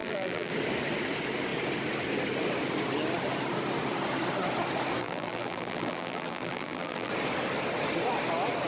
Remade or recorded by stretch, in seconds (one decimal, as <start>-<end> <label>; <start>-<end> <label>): 0.0-0.5 remade; 0.5-5.0 recorded; 5.0-7.1 remade; 7.1-8.7 recorded

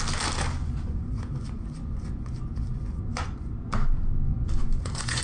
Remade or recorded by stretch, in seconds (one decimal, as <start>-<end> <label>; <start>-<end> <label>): 0.0-0.6 recorded; 0.6-3.7 remade; 3.7-4.3 recorded; 4.3-5.2 remade

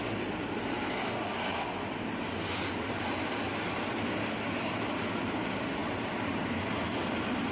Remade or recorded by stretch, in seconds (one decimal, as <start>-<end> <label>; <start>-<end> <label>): 0.0-7.5 recorded

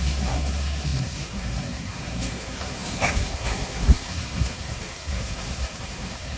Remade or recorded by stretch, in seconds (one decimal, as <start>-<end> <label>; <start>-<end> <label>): 0.0-6.4 remade

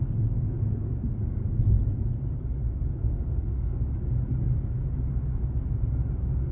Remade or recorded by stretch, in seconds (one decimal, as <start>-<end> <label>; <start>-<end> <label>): 0.0-3.0 recorded; 3.0-3.9 remade; 3.9-6.5 recorded

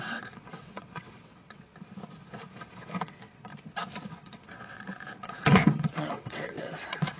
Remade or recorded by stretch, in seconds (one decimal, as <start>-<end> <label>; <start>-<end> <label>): 0.0-1.7 remade; 1.7-2.7 recorded; 2.7-3.5 remade; 3.5-4.1 recorded; 4.1-7.2 remade

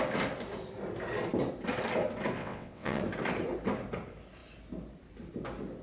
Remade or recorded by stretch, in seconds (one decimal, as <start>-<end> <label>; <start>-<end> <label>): 0.0-2.4 recorded; 2.4-3.0 remade; 3.0-5.8 recorded